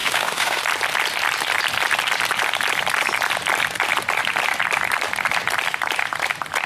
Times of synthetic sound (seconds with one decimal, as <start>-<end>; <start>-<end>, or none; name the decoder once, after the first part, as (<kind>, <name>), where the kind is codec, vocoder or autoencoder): 0.0-0.6 (autoencoder, DAC-VAE)